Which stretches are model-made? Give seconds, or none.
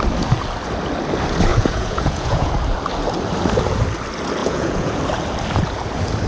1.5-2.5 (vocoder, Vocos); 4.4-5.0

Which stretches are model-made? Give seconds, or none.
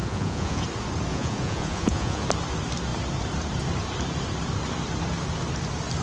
0.0-0.6 (vocoder, Vocos); 1.1-2.2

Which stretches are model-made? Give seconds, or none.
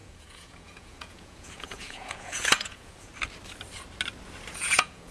0.0-3.1 (vocoder, Vocos); 4.5-5.1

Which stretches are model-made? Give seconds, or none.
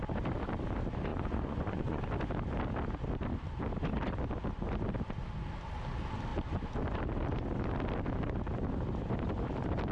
1.1-2.0 (vocoder, Vocos)